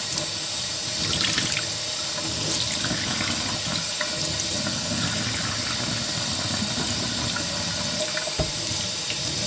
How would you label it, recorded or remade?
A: recorded